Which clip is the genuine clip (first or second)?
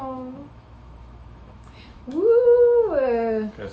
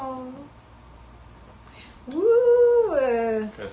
second